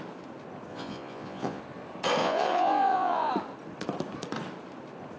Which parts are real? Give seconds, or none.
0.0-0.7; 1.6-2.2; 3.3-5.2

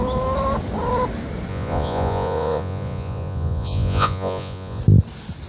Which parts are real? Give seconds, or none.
0.0-1.5; 4.8-5.5

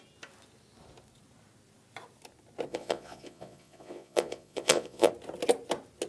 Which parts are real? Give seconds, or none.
0.0-2.7; 5.1-6.1